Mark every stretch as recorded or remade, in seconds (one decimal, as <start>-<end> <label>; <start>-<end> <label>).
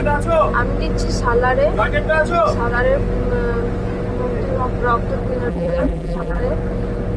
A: 0.0-5.5 recorded; 5.5-6.4 remade; 6.4-7.2 recorded